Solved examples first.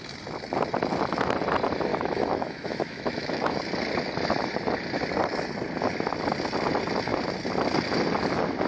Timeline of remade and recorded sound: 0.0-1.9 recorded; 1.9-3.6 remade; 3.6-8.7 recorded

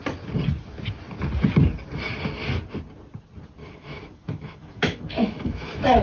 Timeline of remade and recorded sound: 0.0-3.6 recorded; 3.6-6.0 remade

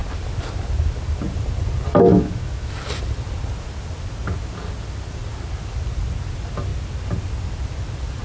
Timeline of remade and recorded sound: 0.0-2.1 recorded; 2.1-2.7 remade; 2.7-8.2 recorded

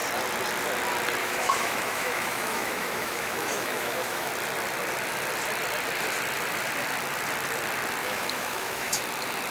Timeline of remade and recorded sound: 0.0-1.2 recorded; 1.2-4.3 remade; 4.3-8.0 recorded; 8.0-9.0 remade; 9.0-9.5 recorded

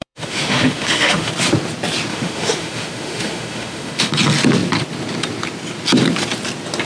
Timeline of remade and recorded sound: 0.0-1.3 remade; 1.3-2.1 recorded; 2.1-4.1 remade; 4.1-6.8 recorded